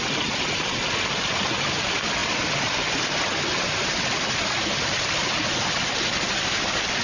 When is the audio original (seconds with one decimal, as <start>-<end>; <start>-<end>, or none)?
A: 0.0-7.0